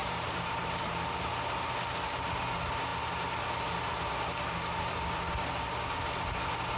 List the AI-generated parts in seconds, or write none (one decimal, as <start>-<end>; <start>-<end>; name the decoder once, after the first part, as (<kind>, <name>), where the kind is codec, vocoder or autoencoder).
0.0-0.8 (vocoder, BigVGAN v2)